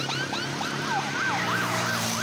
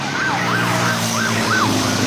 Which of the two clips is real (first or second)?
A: first